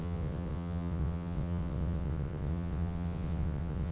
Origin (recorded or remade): remade